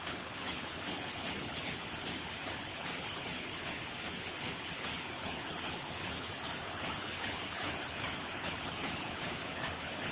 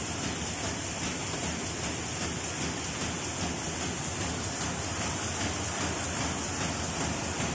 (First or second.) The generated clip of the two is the first